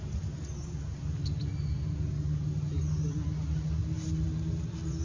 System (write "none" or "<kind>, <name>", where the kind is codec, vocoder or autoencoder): none